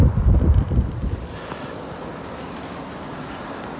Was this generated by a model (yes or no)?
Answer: no